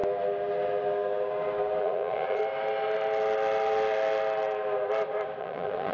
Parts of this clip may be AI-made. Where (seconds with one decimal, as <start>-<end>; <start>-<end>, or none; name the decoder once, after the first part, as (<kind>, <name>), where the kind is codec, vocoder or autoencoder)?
1.8-2.4 (vocoder, Vocos); 5.4-5.9